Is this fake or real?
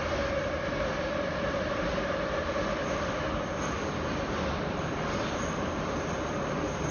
real